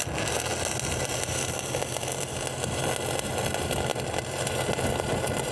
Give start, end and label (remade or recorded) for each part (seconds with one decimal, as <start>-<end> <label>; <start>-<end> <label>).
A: 0.0-5.5 recorded